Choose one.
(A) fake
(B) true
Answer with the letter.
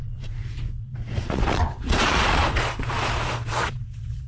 A